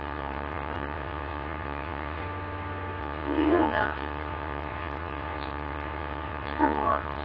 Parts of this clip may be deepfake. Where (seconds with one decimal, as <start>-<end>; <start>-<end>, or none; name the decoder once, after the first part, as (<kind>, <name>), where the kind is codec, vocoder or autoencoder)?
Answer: 0.0-2.2 (vocoder, WaveNeXt); 3.0-7.2